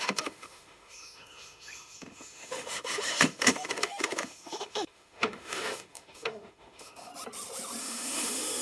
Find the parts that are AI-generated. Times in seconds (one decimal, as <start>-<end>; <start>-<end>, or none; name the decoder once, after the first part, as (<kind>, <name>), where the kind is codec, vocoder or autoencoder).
0.0-7.1 (autoencoder, DAC-VAE); 7.8-8.6